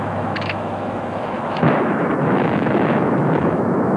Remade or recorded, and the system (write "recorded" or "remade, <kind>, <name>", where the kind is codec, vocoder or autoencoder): remade, autoencoder, DAC-VAE